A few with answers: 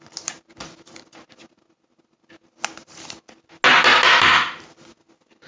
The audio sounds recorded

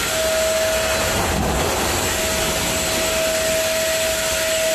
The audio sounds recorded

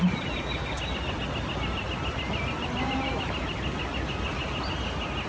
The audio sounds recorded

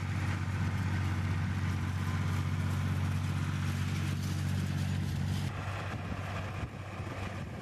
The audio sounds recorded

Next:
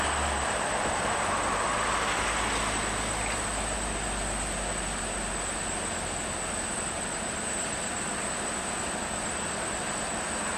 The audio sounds recorded